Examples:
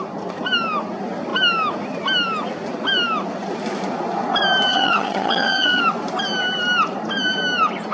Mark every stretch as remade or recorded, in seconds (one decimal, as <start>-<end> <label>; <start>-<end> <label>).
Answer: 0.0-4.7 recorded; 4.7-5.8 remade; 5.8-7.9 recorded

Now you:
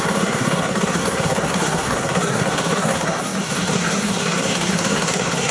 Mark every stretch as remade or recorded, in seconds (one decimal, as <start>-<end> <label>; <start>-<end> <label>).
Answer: 0.0-5.5 remade

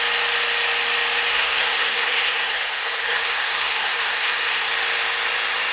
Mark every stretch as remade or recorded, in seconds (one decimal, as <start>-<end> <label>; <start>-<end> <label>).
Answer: 0.0-1.3 recorded; 1.3-4.7 remade; 4.7-5.7 recorded

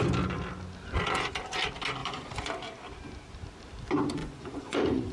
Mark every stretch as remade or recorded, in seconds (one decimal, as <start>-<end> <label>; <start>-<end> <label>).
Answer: 0.0-2.0 recorded; 2.0-2.5 remade; 2.5-4.2 recorded; 4.2-5.1 remade